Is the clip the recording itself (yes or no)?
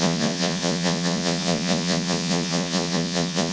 no